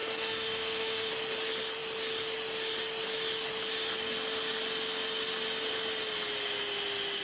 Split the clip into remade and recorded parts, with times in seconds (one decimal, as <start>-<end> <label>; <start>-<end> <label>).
0.0-1.1 remade; 1.1-7.2 recorded